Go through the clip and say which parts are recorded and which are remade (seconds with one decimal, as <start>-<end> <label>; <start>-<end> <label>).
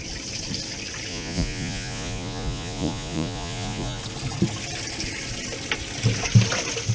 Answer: 0.0-1.1 recorded; 1.1-4.0 remade; 4.0-6.9 recorded